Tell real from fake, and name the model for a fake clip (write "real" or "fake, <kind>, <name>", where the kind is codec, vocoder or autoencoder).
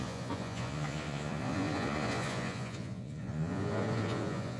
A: fake, vocoder, Vocos